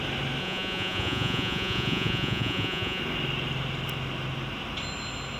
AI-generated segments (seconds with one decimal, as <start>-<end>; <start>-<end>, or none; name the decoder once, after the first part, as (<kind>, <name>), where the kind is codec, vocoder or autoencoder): 0.4-3.0 (vocoder, Vocos)